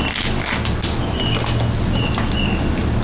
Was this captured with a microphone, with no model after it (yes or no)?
yes